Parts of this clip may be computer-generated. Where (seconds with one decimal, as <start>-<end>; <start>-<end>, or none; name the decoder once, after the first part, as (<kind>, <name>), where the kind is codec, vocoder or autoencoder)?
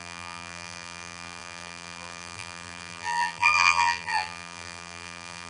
0.0-5.5 (vocoder, BigVGAN v2)